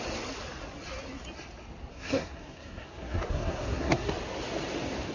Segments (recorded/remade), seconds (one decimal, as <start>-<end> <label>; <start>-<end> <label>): 0.0-1.9 recorded; 1.9-4.1 remade; 4.1-5.1 recorded